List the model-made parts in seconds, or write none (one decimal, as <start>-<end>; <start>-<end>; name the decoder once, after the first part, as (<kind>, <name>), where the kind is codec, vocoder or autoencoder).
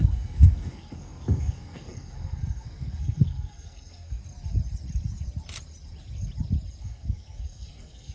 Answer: 0.0-4.2 (codec, SNAC); 6.8-8.1